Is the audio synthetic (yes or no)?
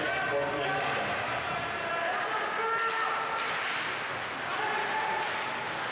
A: no